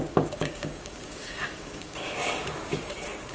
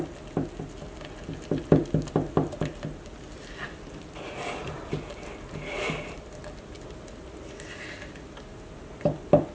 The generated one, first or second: first